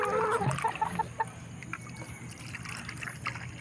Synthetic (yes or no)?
no